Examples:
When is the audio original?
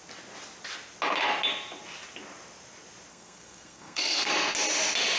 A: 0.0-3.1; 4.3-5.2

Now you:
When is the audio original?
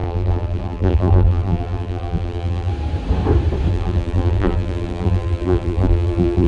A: 2.7-3.7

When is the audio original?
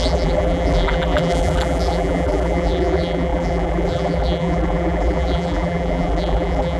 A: none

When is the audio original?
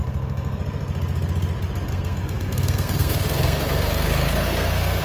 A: 0.6-1.9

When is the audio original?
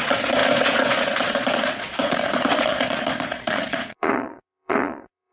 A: none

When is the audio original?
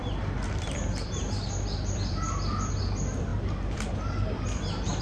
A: 2.8-3.3